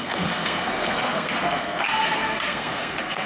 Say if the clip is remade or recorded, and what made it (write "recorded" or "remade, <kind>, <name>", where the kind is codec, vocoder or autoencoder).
remade, codec, SNAC